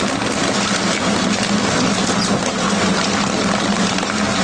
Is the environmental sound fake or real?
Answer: real